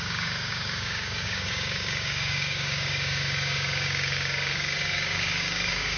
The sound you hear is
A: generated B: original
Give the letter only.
A